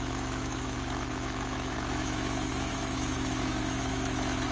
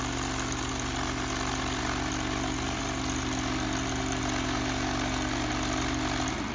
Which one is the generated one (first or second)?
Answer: first